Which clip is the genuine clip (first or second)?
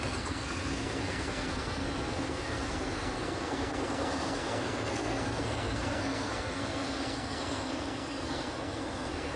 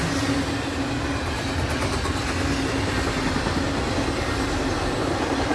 second